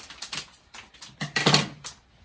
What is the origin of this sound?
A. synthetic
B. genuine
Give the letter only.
B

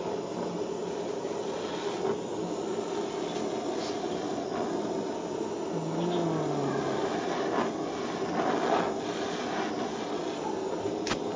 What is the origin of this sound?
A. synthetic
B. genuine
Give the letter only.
B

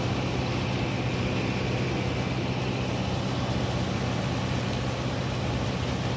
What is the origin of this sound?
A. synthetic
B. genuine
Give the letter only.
B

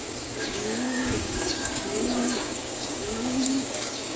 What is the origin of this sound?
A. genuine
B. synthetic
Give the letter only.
B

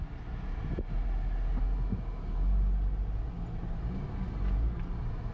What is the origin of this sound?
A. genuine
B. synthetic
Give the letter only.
A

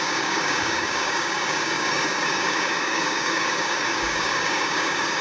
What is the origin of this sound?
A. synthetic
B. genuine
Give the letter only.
A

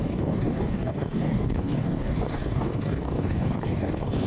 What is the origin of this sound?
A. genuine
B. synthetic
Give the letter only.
B